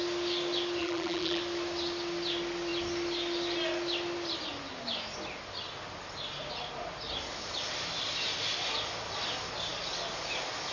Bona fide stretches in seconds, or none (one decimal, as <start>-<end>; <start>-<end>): 0.0-0.8; 1.4-10.7